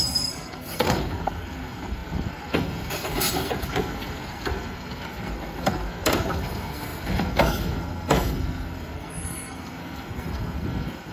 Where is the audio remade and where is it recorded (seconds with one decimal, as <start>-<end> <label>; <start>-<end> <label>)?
0.0-11.1 remade